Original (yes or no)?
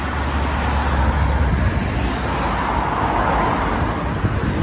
yes